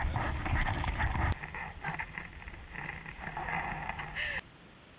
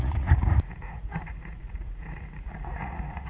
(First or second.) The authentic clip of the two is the first